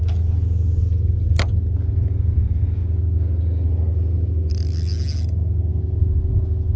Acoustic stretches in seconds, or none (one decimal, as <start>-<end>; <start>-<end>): 0.0-6.8